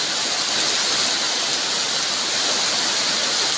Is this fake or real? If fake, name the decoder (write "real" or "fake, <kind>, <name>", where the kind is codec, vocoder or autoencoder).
real